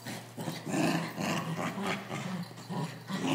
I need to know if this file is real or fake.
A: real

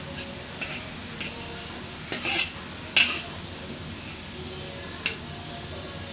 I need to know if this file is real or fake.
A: real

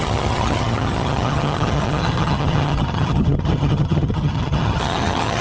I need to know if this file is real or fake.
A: fake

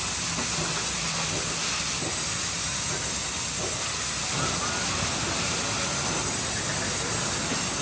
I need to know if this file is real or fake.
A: real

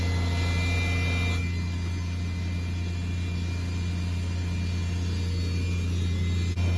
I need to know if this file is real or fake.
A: real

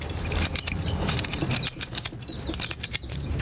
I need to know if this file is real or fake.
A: fake